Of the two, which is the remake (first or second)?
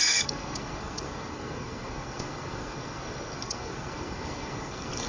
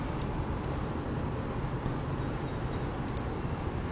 first